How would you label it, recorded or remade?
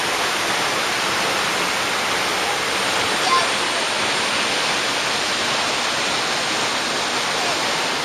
recorded